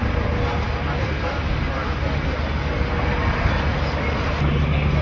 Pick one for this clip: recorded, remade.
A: recorded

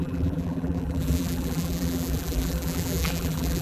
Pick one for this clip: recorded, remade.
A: remade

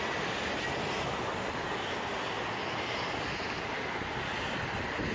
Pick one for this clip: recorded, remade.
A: recorded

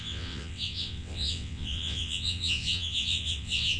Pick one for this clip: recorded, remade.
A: remade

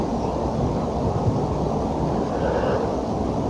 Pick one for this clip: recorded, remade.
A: recorded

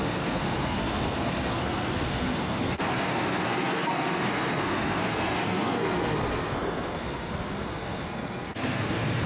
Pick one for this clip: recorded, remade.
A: remade